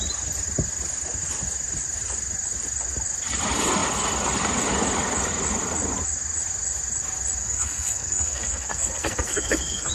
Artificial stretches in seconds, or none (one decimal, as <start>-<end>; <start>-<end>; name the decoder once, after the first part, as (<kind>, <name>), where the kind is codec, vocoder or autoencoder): 7.4-9.9 (codec, SNAC)